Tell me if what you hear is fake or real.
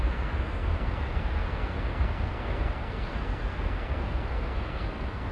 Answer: fake